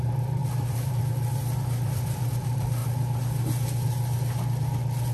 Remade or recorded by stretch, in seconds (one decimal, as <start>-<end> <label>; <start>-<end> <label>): 0.0-2.8 remade; 2.8-5.1 recorded